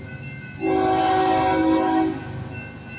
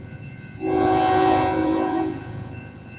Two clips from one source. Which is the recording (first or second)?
first